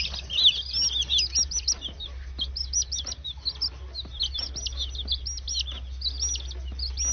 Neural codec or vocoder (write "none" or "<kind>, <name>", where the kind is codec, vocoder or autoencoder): none